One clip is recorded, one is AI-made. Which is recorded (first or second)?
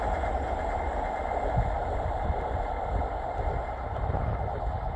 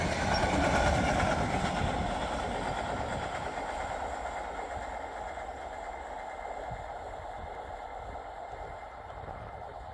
second